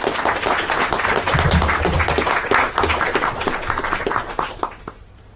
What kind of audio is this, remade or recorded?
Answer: recorded